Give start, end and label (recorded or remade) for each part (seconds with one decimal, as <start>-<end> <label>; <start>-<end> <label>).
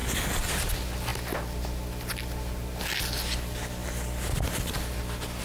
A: 0.0-0.7 remade; 0.7-3.8 recorded; 3.8-5.0 remade; 5.0-5.4 recorded